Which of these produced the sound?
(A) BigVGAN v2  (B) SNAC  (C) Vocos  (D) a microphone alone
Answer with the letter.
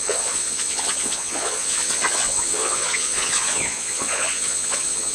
C